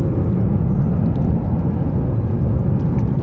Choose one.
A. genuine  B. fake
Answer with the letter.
A